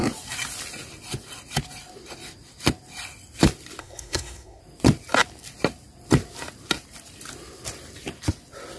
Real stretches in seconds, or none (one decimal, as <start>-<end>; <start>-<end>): 0.0-3.8; 4.6-8.8